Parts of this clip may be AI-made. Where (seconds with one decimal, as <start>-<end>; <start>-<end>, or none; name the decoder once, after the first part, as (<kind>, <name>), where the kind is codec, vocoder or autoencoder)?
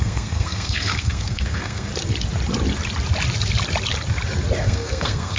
0.0-1.9 (codec, SNAC); 4.6-5.4